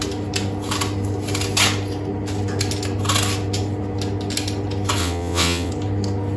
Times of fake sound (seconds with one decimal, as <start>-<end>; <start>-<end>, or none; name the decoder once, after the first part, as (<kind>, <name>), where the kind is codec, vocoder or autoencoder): 5.0-5.7 (vocoder, WaveNeXt)